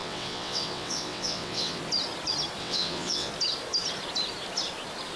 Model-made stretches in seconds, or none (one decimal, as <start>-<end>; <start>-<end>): 0.0-1.8; 2.6-3.3